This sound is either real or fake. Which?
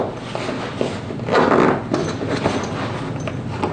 real